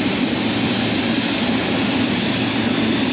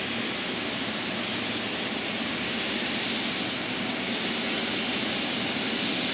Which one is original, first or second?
second